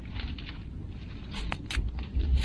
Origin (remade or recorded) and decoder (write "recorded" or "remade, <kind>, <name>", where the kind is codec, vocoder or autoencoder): recorded